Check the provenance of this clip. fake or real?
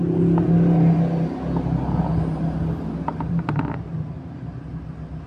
real